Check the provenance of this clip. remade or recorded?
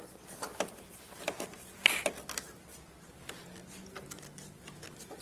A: recorded